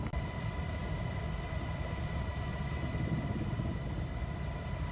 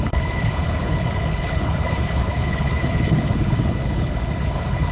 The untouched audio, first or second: first